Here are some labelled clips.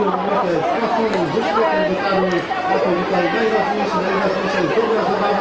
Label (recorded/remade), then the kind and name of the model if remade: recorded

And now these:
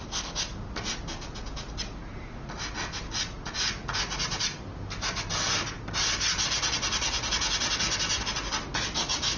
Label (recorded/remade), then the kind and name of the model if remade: recorded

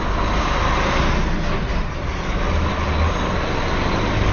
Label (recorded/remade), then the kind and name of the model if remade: recorded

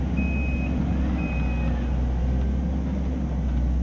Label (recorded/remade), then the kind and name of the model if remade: recorded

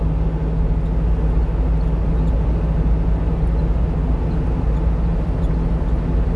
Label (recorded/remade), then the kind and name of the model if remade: recorded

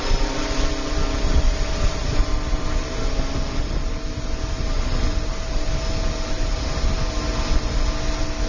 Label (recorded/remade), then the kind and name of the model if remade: recorded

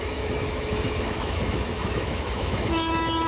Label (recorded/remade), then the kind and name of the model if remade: remade, autoencoder, DAC-VAE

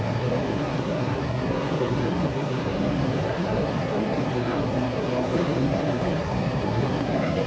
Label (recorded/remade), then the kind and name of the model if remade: remade, codec, SNAC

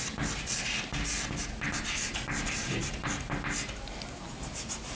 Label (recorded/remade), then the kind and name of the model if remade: recorded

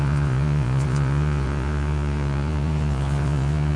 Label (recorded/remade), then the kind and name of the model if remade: remade, vocoder, Vocos